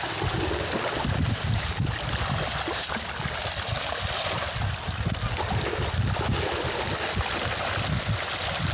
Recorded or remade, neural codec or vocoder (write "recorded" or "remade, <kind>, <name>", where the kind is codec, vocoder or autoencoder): recorded